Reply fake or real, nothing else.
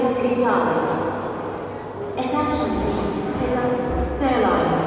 real